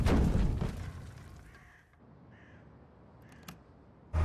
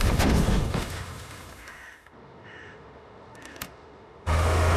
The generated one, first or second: second